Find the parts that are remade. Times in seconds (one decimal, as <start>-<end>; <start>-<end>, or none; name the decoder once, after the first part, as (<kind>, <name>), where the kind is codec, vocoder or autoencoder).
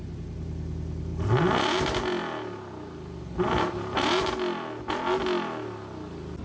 none